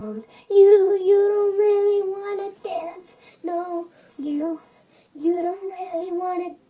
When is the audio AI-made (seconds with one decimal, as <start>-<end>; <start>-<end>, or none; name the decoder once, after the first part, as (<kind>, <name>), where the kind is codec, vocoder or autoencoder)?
0.0-0.9 (codec, ZipCodec); 2.6-3.3; 4.1-4.8; 5.2-6.1